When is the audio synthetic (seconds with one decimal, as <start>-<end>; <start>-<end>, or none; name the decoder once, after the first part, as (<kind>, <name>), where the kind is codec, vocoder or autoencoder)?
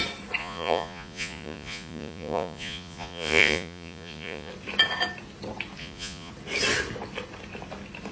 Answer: 0.4-4.5 (vocoder, Vocos); 5.8-6.3